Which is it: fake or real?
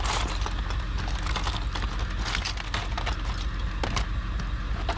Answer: real